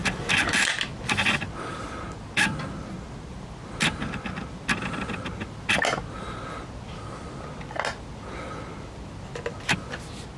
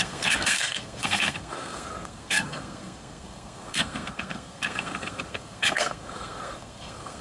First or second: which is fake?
second